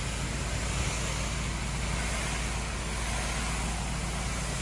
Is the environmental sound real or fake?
real